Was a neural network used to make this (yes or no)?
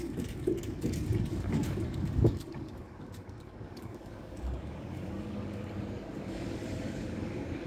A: yes